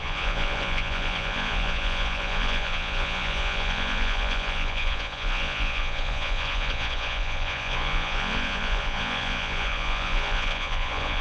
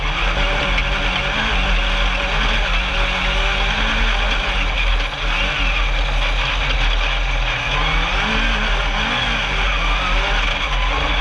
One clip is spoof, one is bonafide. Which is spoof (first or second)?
first